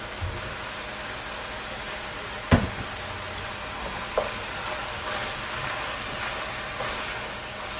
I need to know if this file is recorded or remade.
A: recorded